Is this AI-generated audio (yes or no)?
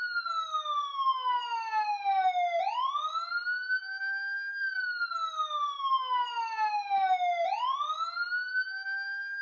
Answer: no